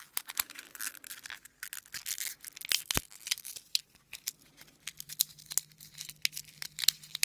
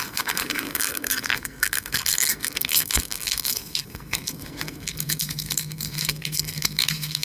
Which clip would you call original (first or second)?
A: first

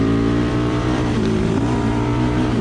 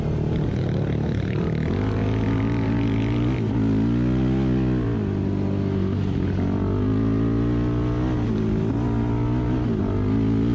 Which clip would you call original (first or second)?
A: second